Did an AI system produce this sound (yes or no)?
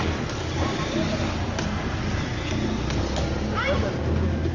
no